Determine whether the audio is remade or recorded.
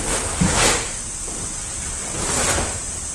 recorded